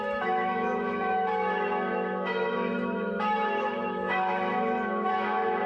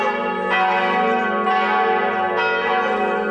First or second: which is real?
second